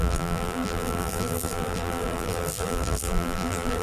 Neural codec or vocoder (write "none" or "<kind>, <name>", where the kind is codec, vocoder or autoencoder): vocoder, BigVGAN v2